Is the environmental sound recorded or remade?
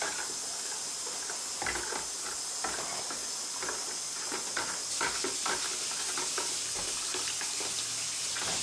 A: recorded